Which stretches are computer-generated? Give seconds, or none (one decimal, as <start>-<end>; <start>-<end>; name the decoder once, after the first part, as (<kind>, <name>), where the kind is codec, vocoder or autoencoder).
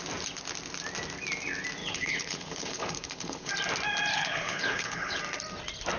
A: 1.8-3.5 (codec, HILCodec); 4.1-5.2